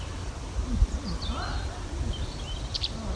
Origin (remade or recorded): recorded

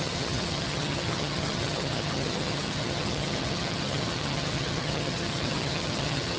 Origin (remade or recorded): remade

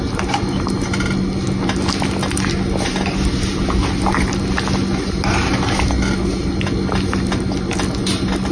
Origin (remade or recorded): recorded